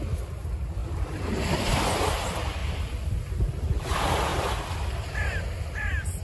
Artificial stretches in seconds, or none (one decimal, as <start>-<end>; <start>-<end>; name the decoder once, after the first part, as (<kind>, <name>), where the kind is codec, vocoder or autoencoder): 0.8-1.7 (vocoder, BigVGAN v2); 2.6-3.5; 4.3-5.4